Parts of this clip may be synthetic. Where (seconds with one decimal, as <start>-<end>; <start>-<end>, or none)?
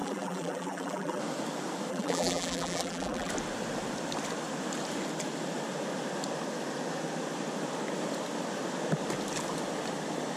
0.0-1.2; 1.9-3.3